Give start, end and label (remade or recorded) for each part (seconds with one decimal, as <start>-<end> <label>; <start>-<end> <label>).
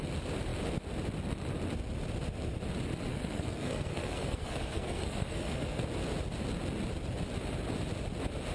0.0-3.1 recorded; 3.1-5.8 remade; 5.8-8.5 recorded